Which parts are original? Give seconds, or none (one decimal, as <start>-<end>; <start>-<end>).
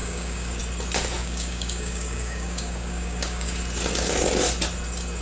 0.6-1.2; 3.6-5.2